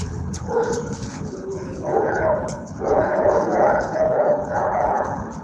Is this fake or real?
fake